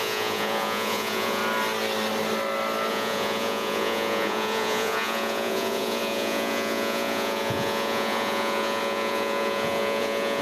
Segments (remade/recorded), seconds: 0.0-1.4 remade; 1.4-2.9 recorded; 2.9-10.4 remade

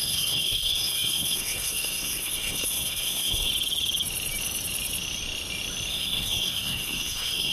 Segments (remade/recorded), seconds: 0.0-3.5 remade; 3.5-5.9 recorded; 5.9-7.5 remade

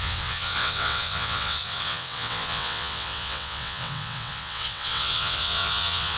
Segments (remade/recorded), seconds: 0.0-6.2 remade

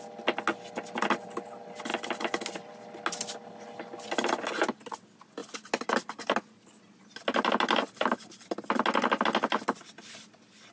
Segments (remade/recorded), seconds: 0.0-1.9 recorded; 1.9-2.8 remade; 2.8-10.7 recorded

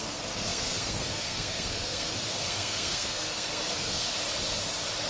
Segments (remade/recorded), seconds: 0.0-4.1 remade; 4.1-5.1 recorded

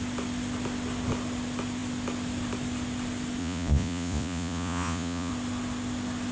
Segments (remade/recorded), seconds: 0.0-3.4 recorded; 3.4-5.3 remade; 5.3-6.3 recorded

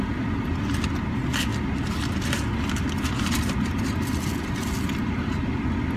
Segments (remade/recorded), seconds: 0.0-6.0 recorded